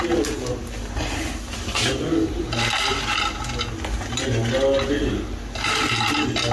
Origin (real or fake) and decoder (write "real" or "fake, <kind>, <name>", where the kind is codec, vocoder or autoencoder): real